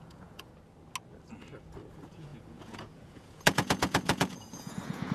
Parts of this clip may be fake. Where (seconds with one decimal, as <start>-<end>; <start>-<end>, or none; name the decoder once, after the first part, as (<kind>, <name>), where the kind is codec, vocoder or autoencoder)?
0.0-0.5 (vocoder, Vocos); 1.9-5.1